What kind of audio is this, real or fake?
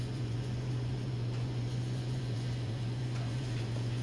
fake